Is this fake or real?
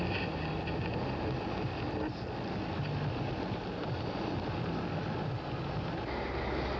real